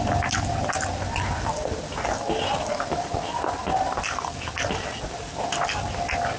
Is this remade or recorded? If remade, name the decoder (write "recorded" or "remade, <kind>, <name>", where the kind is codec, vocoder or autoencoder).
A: recorded